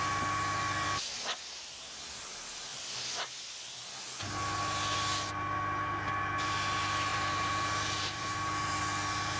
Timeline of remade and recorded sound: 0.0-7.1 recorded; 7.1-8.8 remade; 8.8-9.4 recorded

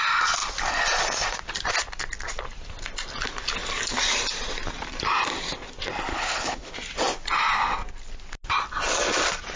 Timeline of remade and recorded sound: 0.0-6.1 recorded; 6.1-6.7 remade; 6.7-9.6 recorded

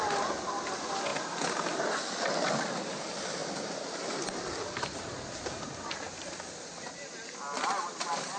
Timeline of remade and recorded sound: 0.0-8.4 recorded

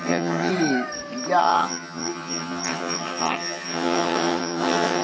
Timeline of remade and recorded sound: 0.0-0.5 remade; 0.5-1.4 recorded; 1.4-5.0 remade

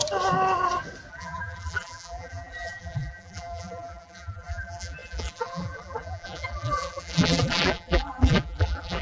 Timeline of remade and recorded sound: 0.0-1.1 recorded; 1.1-9.0 remade